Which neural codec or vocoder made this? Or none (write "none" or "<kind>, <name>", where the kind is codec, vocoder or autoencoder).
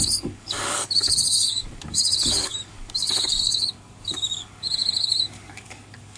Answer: codec, DAC